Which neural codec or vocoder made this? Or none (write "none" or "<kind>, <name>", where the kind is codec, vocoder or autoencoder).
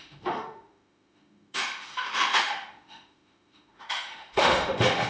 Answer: autoencoder, DAC-VAE